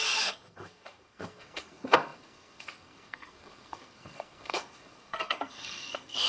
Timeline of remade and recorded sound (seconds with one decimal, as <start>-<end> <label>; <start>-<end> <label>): 0.0-6.3 remade

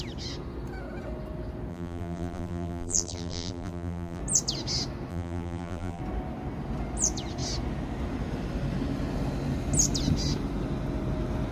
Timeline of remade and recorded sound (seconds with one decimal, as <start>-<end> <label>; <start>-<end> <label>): 0.0-1.7 recorded; 1.7-4.2 remade; 4.2-5.1 recorded; 5.1-6.0 remade; 6.0-11.5 recorded

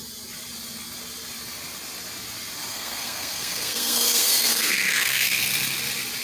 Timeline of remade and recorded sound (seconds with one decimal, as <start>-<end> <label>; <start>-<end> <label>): 0.0-2.7 recorded; 2.7-5.4 remade; 5.4-6.2 recorded

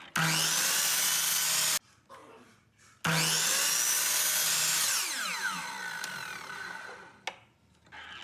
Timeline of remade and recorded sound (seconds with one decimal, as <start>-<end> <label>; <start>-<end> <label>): 0.0-8.2 recorded